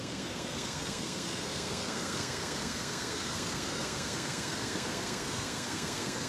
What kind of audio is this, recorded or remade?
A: remade